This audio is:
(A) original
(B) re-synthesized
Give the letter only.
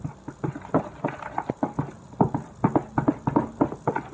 A